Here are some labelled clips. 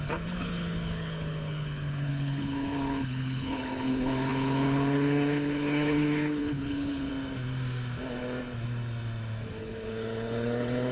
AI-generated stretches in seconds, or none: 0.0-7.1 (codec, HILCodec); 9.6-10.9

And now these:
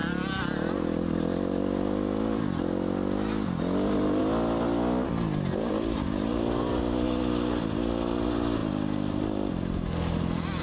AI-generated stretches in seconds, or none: none

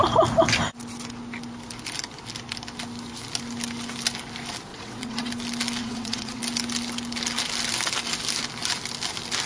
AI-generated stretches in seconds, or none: 4.7-5.3 (vocoder, WaveNeXt); 5.8-6.4

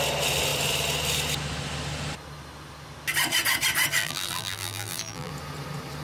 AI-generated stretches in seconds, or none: 4.0-5.3 (vocoder, BigVGAN v2)

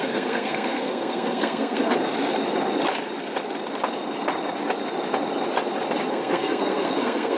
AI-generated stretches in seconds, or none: 0.0-1.9 (codec, SNAC); 6.1-7.4

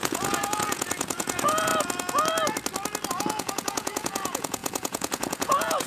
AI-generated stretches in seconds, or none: 0.0-1.7 (vocoder, Vocos); 3.1-5.9

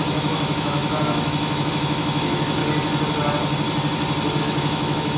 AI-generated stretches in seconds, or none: 0.0-2.6 (autoencoder, DAC-VAE); 4.4-5.2